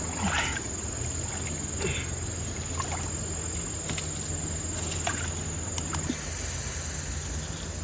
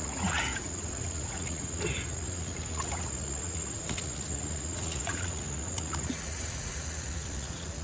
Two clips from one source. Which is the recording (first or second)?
first